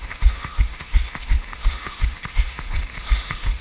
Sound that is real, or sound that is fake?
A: fake